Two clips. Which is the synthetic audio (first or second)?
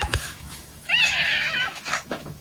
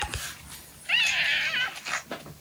first